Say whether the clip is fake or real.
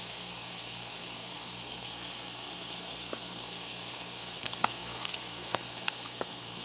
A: fake